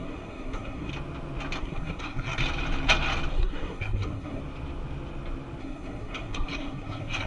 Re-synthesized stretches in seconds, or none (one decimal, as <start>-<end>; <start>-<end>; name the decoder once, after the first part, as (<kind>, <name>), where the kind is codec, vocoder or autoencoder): 0.0-0.9 (codec, SNAC); 1.6-2.4; 3.3-4.4; 5.6-7.3